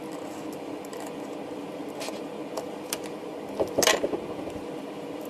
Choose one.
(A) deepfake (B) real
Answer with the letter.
B